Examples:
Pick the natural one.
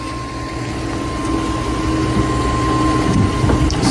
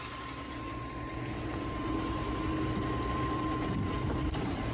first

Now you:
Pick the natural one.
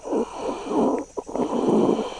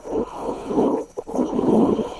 first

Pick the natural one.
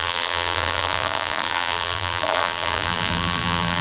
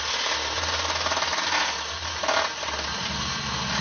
second